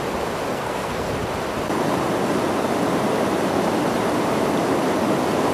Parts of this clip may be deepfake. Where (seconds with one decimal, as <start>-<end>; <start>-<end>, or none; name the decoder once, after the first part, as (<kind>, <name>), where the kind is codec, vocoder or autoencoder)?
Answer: 0.5-1.1 (codec, SNAC)